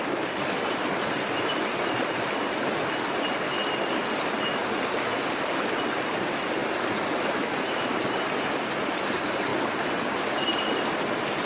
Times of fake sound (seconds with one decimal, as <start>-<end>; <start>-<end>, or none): none